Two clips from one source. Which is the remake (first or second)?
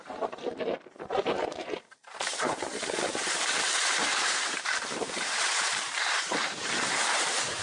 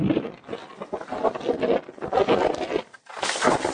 first